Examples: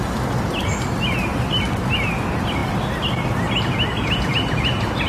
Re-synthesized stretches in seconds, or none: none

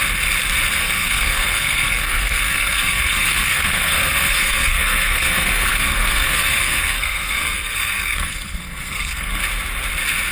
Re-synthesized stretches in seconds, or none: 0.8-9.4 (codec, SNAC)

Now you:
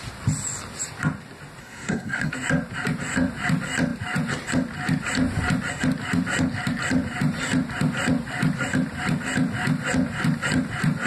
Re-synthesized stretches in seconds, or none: 1.6-2.3 (codec, SNAC)

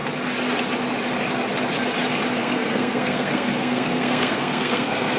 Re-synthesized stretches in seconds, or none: 2.4-5.2 (codec, SNAC)